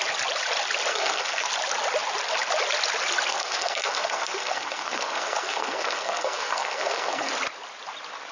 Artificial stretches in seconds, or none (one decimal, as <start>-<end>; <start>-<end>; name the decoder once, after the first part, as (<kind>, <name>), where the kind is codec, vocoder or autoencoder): 0.9-1.5 (codec, SNAC); 3.3-7.3

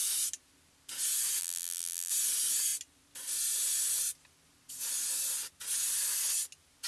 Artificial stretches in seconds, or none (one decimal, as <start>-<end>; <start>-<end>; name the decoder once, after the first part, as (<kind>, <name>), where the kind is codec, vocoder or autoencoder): 1.4-2.1 (vocoder, BigVGAN v2)